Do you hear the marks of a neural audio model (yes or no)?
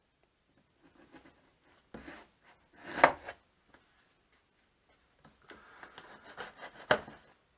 no